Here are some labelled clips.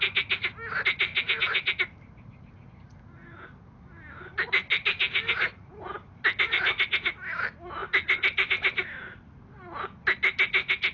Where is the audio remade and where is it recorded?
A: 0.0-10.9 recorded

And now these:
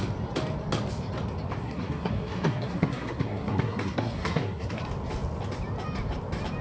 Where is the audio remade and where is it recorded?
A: 0.0-1.6 recorded; 1.6-4.8 remade; 4.8-6.6 recorded

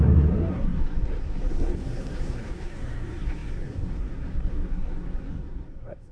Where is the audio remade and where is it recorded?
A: 0.0-6.1 remade

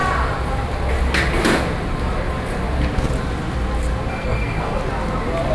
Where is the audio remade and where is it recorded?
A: 0.0-4.1 recorded; 4.1-4.8 remade; 4.8-5.5 recorded

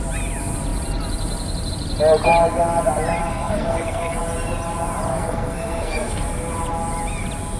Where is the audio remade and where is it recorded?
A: 0.0-3.2 recorded; 3.2-4.2 remade; 4.2-5.1 recorded; 5.1-6.2 remade; 6.2-7.6 recorded

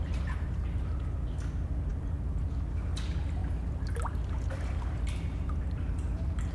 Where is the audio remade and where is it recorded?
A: 0.0-6.5 recorded

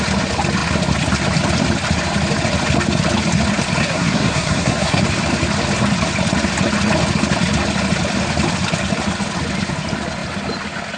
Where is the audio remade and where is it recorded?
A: 0.0-3.8 recorded; 3.8-5.0 remade; 5.0-11.0 recorded